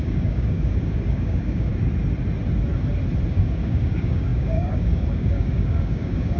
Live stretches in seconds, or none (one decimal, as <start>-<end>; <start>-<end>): 1.7-3.3